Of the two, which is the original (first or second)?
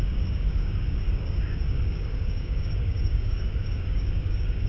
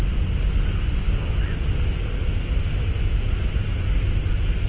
second